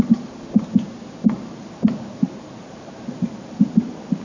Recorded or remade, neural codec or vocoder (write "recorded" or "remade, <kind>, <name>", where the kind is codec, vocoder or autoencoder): recorded